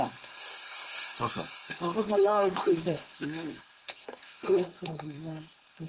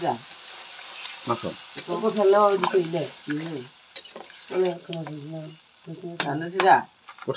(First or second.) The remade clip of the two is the first